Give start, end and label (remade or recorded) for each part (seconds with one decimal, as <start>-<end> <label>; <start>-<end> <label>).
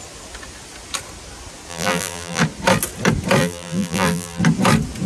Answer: 0.0-1.7 recorded; 1.7-2.4 remade; 2.4-3.4 recorded; 3.4-4.4 remade; 4.4-5.1 recorded